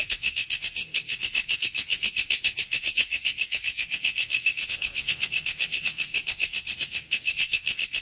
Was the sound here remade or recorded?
remade